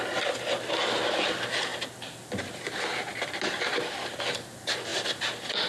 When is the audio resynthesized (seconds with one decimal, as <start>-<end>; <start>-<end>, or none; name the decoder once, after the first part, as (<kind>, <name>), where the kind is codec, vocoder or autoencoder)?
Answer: none